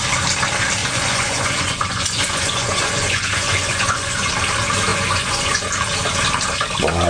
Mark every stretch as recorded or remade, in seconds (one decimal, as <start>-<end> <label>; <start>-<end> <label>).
0.0-0.8 recorded; 0.8-4.3 remade; 4.3-4.9 recorded; 4.9-5.7 remade; 5.7-7.1 recorded